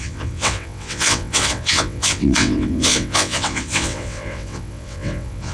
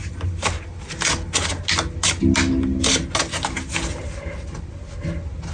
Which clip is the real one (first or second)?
second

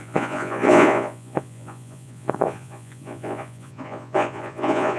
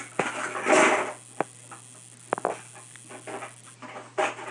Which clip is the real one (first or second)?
second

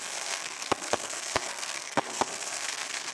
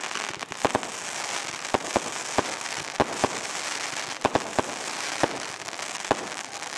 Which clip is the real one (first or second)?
second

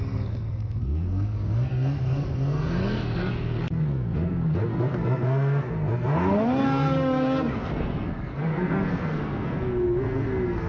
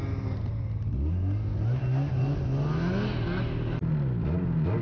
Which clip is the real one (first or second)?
second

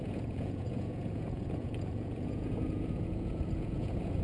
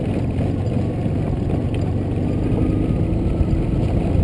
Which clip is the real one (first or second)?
second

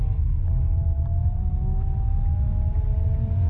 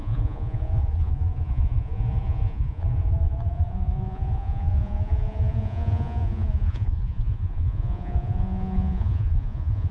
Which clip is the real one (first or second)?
first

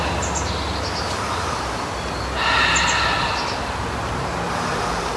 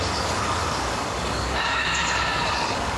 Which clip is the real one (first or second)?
first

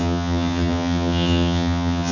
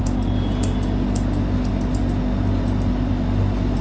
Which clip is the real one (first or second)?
second